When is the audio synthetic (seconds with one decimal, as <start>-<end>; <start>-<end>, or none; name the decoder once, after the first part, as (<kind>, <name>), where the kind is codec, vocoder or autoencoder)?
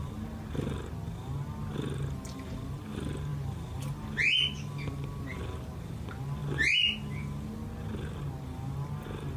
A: none